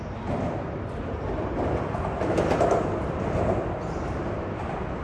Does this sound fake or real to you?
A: real